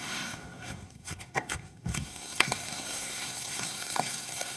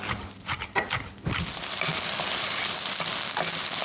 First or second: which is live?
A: second